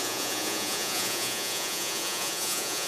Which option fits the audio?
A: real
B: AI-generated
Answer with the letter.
B